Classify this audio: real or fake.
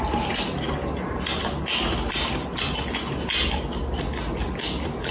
real